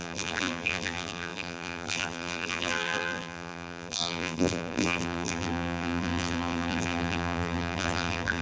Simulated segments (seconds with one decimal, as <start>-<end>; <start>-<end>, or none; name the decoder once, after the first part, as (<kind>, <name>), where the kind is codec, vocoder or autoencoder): 0.0-8.4 (vocoder, BigVGAN v2)